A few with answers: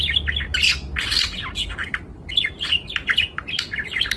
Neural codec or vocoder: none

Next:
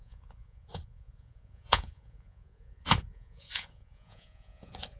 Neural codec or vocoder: vocoder, Vocos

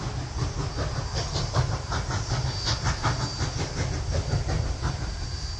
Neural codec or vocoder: none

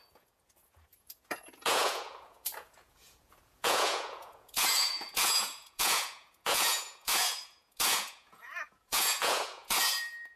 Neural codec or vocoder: vocoder, Vocos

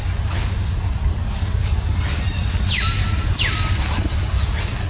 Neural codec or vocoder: none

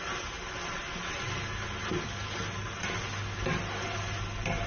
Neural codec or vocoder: none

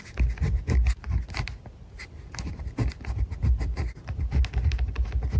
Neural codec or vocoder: none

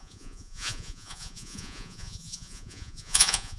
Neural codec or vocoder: vocoder, Vocos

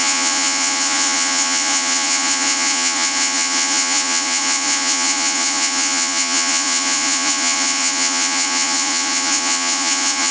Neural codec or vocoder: vocoder, Vocos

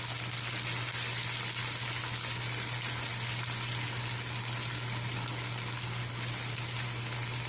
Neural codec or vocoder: none